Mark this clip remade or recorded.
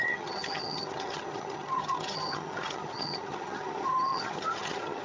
remade